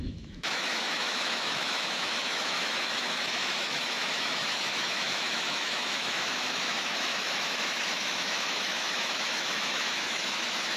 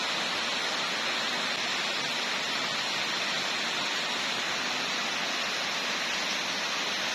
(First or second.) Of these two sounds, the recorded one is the second